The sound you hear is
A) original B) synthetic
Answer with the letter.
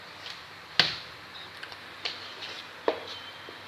A